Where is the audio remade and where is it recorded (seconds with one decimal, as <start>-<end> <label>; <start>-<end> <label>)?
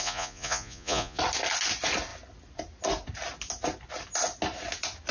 0.0-1.2 remade; 1.2-5.1 recorded